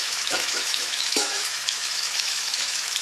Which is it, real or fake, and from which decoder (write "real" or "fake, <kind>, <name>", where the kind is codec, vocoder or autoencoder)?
fake, autoencoder, DAC-VAE